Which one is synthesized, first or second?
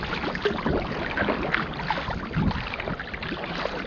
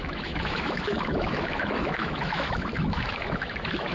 second